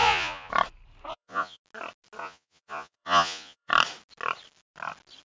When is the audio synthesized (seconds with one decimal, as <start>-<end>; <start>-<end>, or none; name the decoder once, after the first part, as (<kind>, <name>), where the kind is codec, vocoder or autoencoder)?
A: 0.0-0.5 (vocoder, Vocos); 1.1-1.6; 2.2-3.7